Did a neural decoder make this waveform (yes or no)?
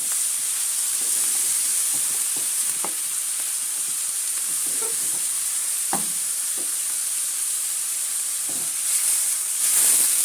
yes